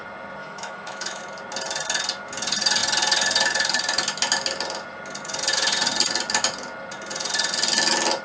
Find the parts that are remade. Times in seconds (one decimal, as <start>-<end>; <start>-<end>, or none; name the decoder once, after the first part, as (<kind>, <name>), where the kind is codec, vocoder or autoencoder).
0.4-1.2 (autoencoder, DAC-VAE)